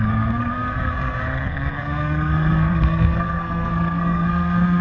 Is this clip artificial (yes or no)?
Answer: yes